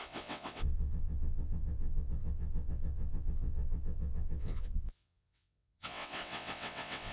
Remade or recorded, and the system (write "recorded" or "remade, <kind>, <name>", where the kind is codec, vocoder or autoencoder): remade, vocoder, WaveNeXt